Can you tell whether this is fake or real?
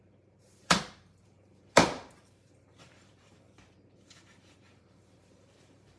fake